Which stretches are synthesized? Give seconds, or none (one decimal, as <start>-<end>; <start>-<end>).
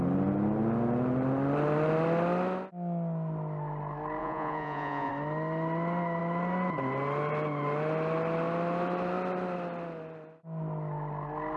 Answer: 4.2-5.1